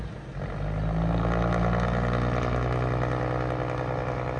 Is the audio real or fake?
real